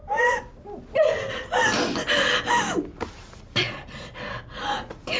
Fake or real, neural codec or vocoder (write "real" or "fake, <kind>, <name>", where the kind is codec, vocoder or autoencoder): real